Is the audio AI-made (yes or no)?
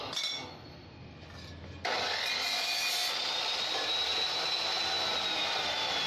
no